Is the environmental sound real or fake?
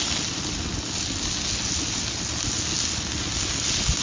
real